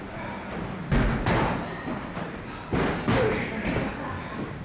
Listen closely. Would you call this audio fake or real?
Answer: real